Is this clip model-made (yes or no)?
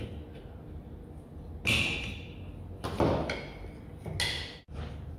no